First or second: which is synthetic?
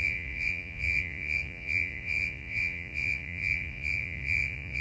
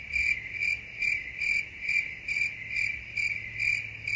first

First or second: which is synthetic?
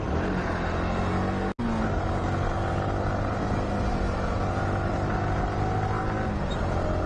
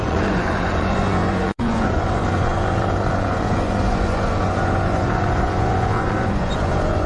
second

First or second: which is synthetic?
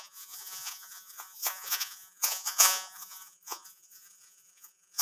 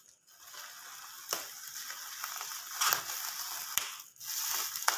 first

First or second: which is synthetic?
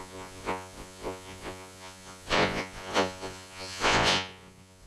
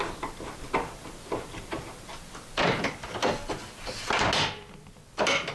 first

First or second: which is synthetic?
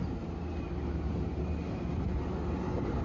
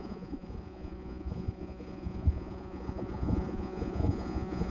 second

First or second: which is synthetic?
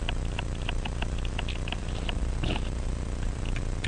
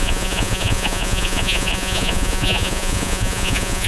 second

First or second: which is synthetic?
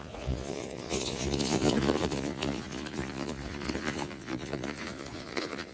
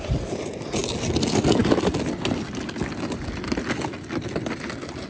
first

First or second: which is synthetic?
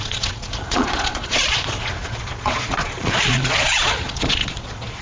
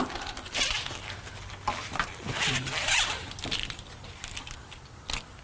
first